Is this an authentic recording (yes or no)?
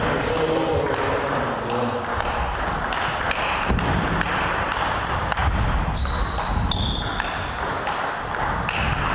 yes